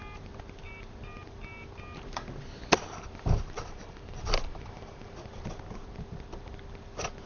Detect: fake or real real